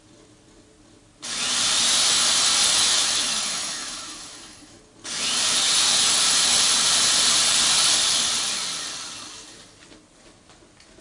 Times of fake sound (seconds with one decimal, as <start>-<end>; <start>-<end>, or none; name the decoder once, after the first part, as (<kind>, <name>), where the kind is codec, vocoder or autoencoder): 2.7-4.8 (autoencoder, DAC-VAE)